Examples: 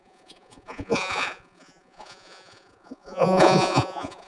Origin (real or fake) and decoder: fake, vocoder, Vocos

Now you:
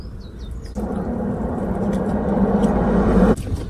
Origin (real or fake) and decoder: fake, vocoder, BigVGAN v2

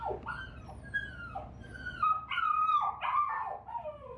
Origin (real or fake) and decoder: real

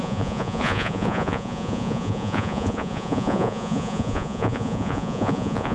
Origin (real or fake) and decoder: fake, vocoder, Vocos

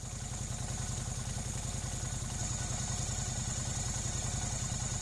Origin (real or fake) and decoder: real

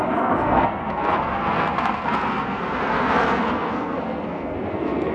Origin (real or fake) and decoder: fake, codec, SNAC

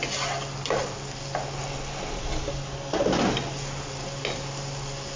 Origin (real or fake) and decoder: real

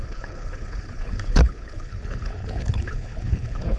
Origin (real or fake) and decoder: fake, codec, HILCodec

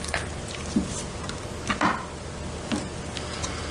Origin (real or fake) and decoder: real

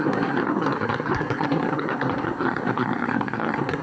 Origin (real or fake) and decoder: fake, codec, SNAC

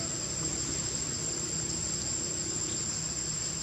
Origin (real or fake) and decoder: real